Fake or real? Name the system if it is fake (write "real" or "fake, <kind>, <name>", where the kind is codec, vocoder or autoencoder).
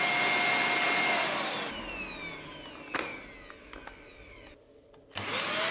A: real